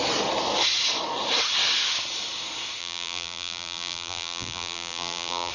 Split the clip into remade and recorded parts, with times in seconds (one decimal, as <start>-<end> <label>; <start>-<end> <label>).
0.0-2.8 recorded; 2.8-5.5 remade

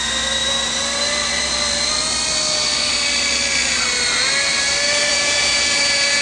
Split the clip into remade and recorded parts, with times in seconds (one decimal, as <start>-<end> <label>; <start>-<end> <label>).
0.0-5.1 recorded; 5.1-6.2 remade

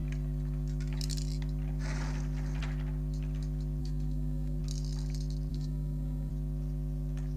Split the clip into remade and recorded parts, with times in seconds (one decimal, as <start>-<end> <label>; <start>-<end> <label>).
0.0-3.8 recorded; 3.8-4.6 remade; 4.6-5.5 recorded; 5.5-6.3 remade; 6.3-7.4 recorded

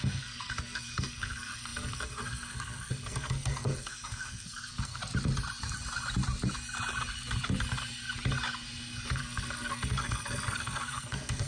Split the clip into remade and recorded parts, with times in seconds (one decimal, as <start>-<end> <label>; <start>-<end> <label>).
0.0-5.0 remade; 5.0-9.1 recorded; 9.1-11.5 remade

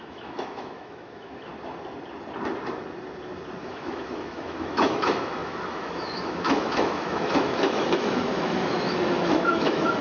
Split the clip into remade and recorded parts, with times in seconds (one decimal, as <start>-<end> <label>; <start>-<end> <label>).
0.0-1.5 remade; 1.5-3.6 recorded; 3.6-10.0 remade